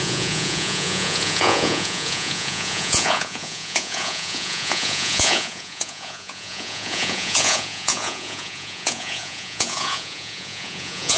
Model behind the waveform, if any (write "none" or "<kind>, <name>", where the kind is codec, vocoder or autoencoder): vocoder, Vocos